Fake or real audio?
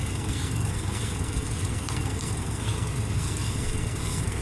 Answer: fake